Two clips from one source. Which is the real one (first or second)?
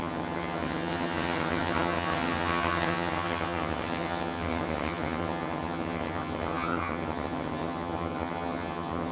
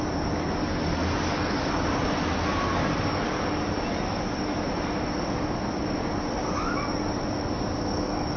second